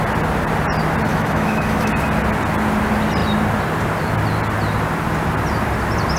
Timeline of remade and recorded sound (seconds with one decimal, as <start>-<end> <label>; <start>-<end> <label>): 0.0-1.1 recorded; 1.1-1.9 remade; 1.9-6.2 recorded